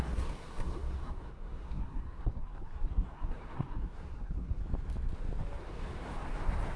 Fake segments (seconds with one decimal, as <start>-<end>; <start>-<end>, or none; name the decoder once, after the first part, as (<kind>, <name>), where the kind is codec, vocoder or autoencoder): 0.0-4.6 (codec, SNAC); 5.6-6.8

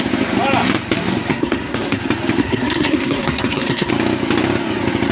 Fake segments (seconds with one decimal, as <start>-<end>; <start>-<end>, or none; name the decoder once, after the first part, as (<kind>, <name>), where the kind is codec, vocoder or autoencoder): 1.3-2.0 (codec, SNAC); 2.4-3.9